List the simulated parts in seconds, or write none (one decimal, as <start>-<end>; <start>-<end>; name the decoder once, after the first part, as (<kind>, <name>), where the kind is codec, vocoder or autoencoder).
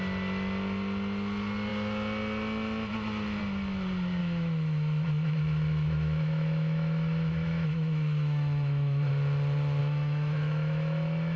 4.2-9.1 (autoencoder, DAC-VAE); 9.8-11.4